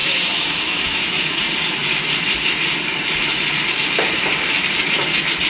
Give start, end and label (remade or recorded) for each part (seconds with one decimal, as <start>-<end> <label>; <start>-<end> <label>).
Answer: 0.0-1.4 remade; 1.4-5.5 recorded